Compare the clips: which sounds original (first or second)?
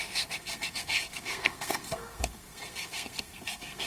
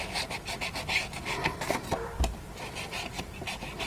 second